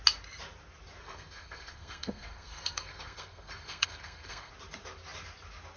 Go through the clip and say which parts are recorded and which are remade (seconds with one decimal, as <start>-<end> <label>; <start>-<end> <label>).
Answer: 0.0-1.0 recorded; 1.0-4.5 remade; 4.5-5.8 recorded